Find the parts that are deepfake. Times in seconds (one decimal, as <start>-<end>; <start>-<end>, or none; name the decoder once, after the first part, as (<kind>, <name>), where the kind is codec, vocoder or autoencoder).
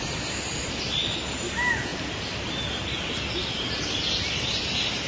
none